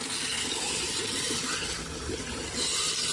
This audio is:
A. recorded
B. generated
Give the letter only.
A